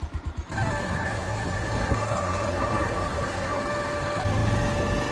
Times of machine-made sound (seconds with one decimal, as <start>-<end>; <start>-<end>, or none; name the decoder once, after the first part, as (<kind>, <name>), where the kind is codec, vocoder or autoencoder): 0.8-3.6 (codec, SNAC)